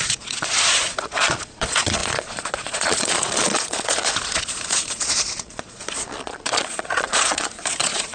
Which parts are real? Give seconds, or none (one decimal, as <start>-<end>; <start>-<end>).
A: none

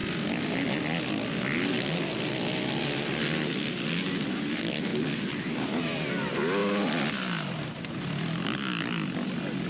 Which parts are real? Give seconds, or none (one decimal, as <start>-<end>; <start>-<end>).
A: 0.0-9.7

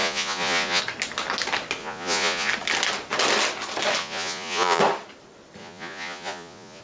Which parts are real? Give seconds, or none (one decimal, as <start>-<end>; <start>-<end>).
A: 0.8-1.8; 2.5-4.0; 4.8-5.6

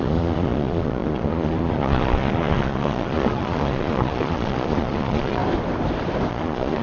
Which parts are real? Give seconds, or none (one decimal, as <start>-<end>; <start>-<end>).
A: 5.4-6.3

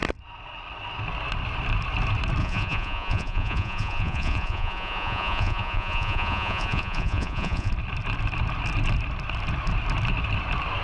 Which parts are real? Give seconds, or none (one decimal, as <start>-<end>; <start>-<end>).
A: 0.0-2.4; 7.7-10.8

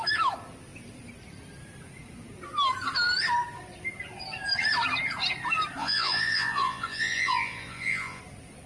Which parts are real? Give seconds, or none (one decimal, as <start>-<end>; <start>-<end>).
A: 0.0-5.8; 8.2-8.7

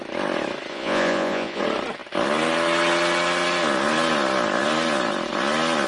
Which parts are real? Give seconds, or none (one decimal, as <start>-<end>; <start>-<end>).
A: 0.0-0.7; 1.6-5.9